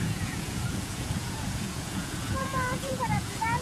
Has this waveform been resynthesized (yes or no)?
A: yes